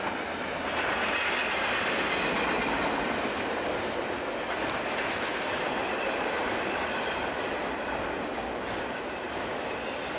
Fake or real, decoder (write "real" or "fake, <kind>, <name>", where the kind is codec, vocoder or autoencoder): real